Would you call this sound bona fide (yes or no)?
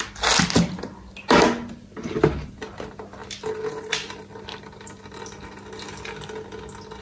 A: yes